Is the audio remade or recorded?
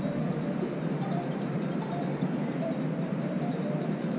remade